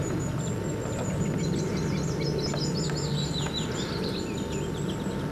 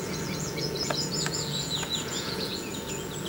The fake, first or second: second